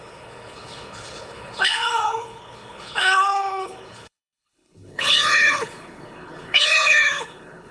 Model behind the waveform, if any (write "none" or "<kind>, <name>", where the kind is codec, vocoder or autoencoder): codec, HILCodec